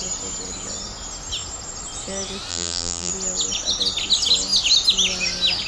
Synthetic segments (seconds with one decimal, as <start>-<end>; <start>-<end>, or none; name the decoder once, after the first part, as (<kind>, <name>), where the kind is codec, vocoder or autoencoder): 2.5-3.1 (vocoder, BigVGAN v2)